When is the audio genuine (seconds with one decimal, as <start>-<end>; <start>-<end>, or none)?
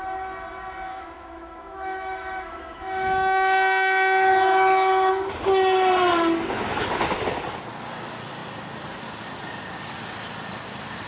0.0-0.9; 5.1-11.1